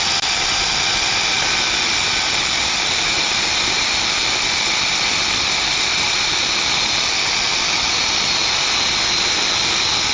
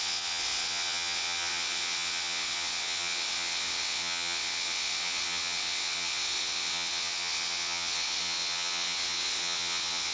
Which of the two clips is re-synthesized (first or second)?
second